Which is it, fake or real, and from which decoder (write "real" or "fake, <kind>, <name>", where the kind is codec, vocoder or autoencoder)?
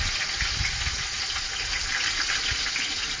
real